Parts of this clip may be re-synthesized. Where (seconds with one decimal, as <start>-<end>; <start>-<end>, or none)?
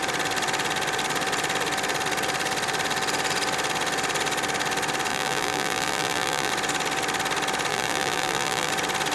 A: 5.1-6.5; 7.7-8.7